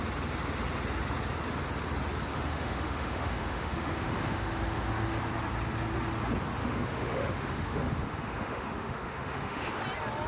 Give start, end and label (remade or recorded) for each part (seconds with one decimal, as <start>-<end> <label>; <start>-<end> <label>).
0.0-2.3 recorded; 2.3-5.2 remade; 5.2-6.6 recorded; 6.6-9.8 remade; 9.8-10.3 recorded